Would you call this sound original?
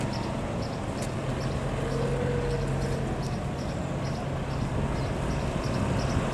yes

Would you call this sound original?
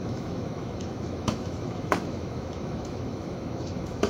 no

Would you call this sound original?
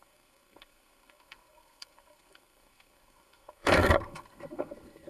no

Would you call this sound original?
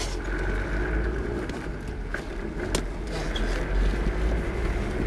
yes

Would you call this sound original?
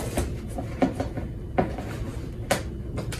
yes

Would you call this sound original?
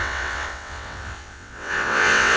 no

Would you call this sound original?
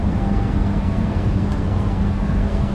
no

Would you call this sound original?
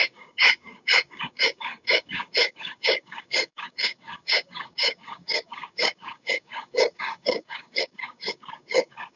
no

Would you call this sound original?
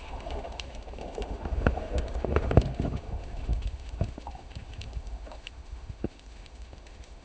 no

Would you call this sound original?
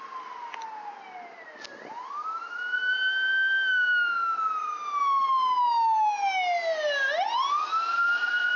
yes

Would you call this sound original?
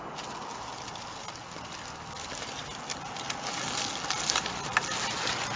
yes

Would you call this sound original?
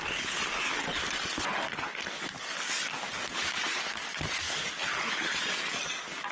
yes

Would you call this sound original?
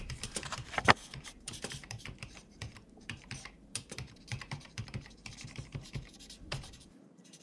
no